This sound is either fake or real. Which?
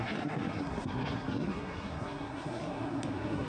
fake